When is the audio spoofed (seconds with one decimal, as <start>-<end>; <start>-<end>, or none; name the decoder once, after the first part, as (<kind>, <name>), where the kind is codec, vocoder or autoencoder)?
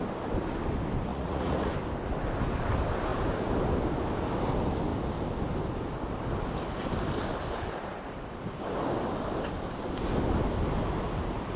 1.1-1.7 (vocoder, Vocos)